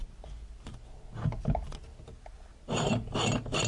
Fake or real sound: real